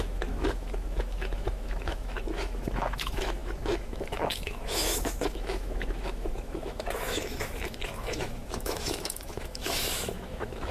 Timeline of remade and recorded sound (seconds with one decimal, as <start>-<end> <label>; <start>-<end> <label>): 0.0-10.7 remade